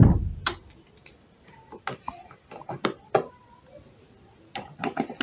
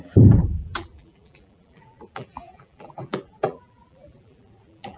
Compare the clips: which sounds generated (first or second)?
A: second